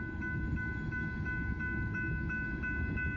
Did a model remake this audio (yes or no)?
no